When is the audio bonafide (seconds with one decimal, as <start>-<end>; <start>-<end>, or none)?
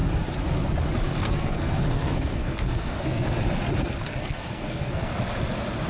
0.0-1.1; 3.4-4.1; 5.1-5.9